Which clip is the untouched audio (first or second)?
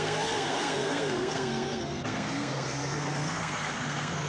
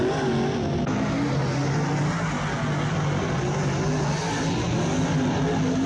second